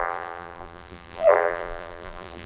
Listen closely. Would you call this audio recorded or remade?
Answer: remade